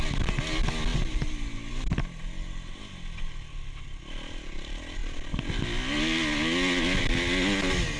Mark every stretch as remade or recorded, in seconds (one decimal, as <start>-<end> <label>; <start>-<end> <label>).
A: 0.0-8.0 recorded

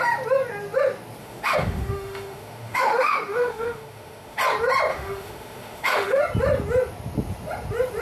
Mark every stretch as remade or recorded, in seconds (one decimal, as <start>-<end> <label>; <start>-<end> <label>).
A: 0.0-1.2 recorded; 1.2-4.4 remade; 4.4-4.9 recorded; 4.9-6.2 remade; 6.2-8.0 recorded

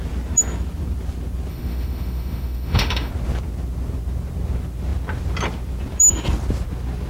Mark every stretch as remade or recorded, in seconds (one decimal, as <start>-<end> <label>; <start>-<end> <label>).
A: 0.0-1.5 recorded; 1.5-3.1 remade; 3.1-7.1 recorded

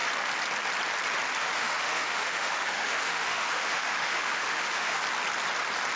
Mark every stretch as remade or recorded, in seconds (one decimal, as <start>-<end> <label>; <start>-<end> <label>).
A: 0.0-1.4 recorded; 1.4-5.0 remade; 5.0-6.0 recorded

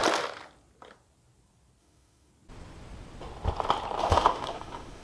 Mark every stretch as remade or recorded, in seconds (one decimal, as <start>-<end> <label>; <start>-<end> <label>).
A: 0.0-1.8 recorded; 1.8-2.3 remade; 2.3-4.0 recorded; 4.0-5.0 remade